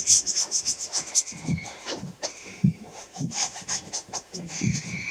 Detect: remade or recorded remade